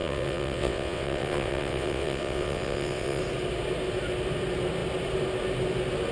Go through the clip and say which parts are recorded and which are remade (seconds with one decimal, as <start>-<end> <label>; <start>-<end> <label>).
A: 0.0-3.2 remade; 3.2-6.1 recorded